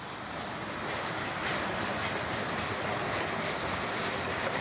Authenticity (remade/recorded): recorded